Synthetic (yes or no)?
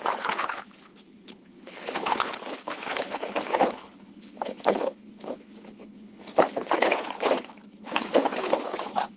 yes